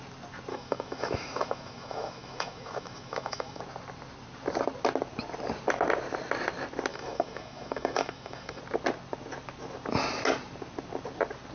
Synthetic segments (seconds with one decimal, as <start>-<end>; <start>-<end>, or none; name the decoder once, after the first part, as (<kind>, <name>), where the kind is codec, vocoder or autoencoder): 0.5-3.6 (autoencoder, DAC-VAE); 6.9-8.6